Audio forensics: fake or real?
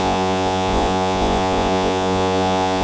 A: fake